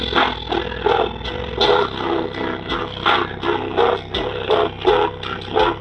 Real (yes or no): yes